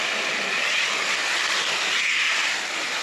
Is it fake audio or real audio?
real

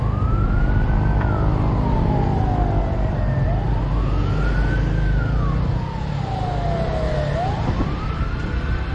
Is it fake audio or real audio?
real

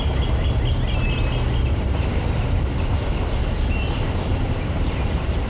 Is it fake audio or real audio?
real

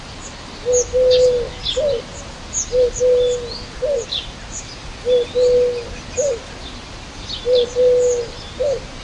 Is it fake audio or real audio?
real